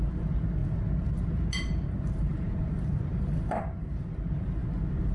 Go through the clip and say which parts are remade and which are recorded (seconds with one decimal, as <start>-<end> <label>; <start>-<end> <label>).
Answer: 0.0-3.1 recorded; 3.1-3.6 remade; 3.6-5.1 recorded